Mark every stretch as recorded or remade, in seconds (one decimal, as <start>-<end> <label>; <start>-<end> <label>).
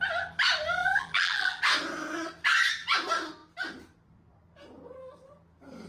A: 0.0-0.8 recorded; 0.8-1.6 remade; 1.6-5.9 recorded